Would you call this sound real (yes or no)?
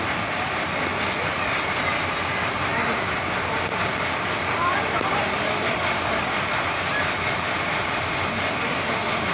yes